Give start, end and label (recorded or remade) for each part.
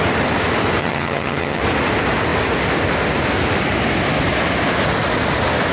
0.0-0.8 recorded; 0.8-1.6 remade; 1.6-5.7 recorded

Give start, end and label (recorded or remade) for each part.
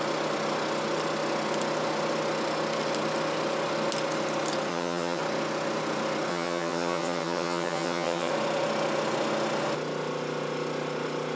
0.0-4.7 recorded; 4.7-5.2 remade; 5.2-6.3 recorded; 6.3-8.3 remade; 8.3-11.4 recorded